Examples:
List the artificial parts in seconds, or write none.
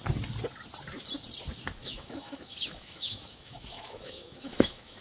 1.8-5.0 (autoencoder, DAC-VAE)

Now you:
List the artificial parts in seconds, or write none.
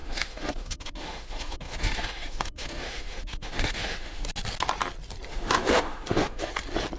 0.0-4.2 (autoencoder, DAC-VAE); 5.3-6.5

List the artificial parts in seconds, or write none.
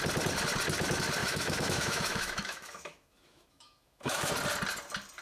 1.2-4.3 (autoencoder, DAC-VAE)